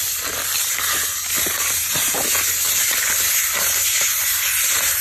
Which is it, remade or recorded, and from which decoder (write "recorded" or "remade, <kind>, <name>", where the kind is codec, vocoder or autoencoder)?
recorded